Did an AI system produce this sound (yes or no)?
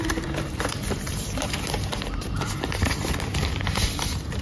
yes